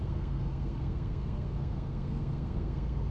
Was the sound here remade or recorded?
remade